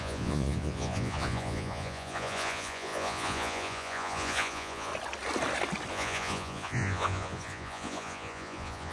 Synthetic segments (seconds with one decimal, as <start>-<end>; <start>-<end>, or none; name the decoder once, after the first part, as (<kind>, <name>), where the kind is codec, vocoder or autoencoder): 0.0-4.9 (vocoder, Vocos); 5.9-8.9